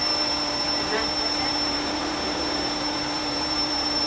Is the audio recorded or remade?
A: remade